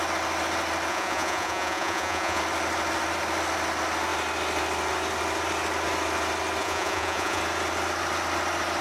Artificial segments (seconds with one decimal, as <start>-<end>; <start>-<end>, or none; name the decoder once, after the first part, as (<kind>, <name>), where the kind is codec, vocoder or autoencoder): 0.9-2.4 (vocoder, Vocos); 6.6-7.4